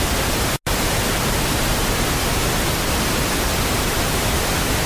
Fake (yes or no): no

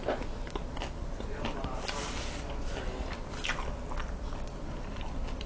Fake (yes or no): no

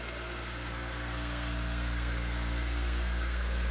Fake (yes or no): yes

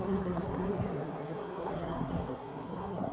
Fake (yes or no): yes